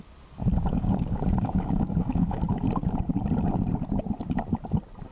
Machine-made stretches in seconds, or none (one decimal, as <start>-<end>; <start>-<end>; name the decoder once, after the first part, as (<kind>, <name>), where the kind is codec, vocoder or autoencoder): 0.7-2.4 (codec, DAC)